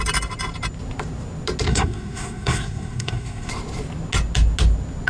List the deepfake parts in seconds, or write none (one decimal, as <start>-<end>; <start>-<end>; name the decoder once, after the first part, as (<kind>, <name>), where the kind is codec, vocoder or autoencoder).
1.7-3.5 (codec, SNAC)